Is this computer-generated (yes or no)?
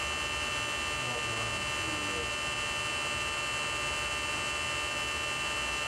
no